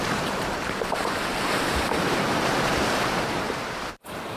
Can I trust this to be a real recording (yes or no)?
no